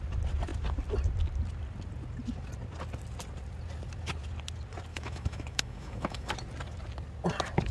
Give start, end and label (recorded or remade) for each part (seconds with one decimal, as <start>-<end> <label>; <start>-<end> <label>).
0.0-4.9 recorded; 4.9-6.3 remade; 6.3-7.7 recorded